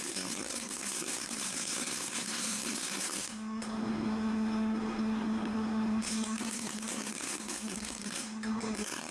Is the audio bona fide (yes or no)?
no